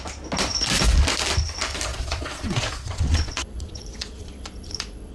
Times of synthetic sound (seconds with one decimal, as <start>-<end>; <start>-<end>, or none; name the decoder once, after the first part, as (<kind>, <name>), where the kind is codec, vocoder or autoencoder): 1.9-5.1 (vocoder, Vocos)